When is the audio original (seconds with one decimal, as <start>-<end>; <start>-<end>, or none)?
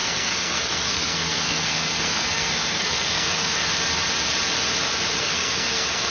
3.7-5.2